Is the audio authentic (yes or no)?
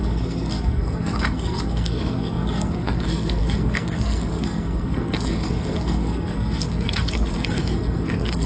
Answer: no